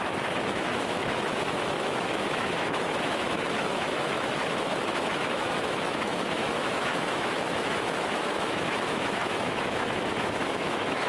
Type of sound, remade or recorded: remade